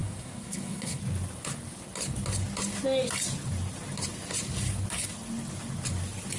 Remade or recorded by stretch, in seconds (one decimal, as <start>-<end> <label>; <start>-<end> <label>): 0.0-1.0 remade; 1.0-6.4 recorded